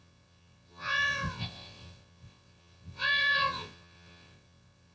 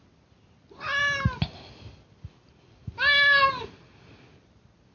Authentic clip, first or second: second